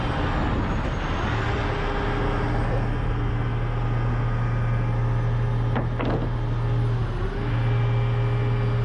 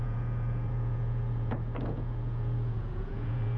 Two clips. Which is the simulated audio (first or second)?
second